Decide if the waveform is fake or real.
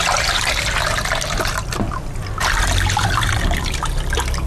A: real